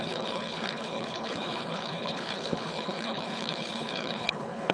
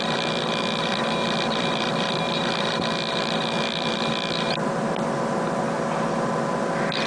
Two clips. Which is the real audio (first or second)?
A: second